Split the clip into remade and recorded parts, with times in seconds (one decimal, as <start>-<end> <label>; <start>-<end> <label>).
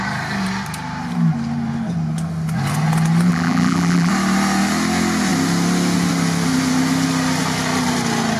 0.0-3.3 recorded; 3.3-4.1 remade; 4.1-8.4 recorded